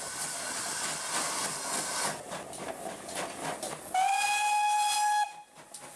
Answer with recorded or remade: recorded